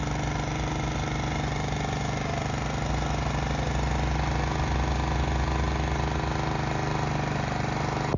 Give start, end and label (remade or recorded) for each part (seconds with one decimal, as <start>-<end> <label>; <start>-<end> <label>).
0.0-8.2 recorded